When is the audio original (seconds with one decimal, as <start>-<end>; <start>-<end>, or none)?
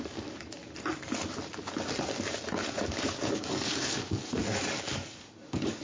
0.6-2.5